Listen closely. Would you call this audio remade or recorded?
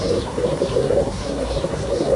remade